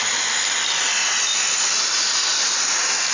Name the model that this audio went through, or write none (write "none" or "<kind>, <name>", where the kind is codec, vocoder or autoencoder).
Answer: none